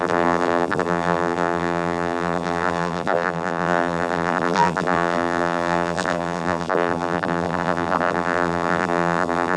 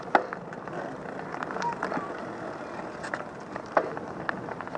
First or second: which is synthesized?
first